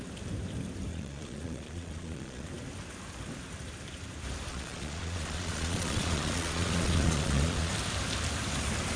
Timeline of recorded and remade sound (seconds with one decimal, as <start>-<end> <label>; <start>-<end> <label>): 0.0-0.9 recorded; 0.9-2.5 remade; 2.5-4.5 recorded; 4.5-7.7 remade; 7.7-9.0 recorded